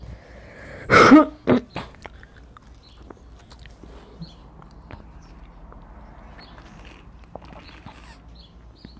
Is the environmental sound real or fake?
real